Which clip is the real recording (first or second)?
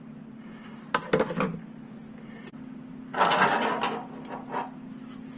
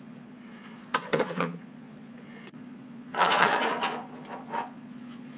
first